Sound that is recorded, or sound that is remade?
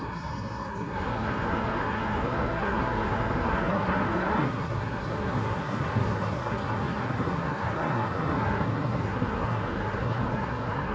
remade